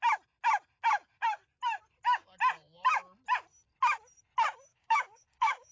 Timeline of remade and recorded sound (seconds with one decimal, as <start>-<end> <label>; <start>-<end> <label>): 0.0-4.7 recorded; 4.7-5.7 remade